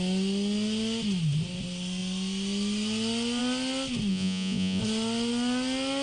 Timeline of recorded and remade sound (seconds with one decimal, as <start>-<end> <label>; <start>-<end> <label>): 0.0-4.1 recorded; 4.1-4.8 remade; 4.8-6.0 recorded